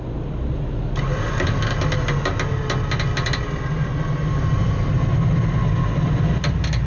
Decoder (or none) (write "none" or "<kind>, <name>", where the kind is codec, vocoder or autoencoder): none